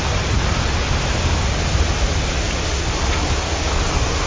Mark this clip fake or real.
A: real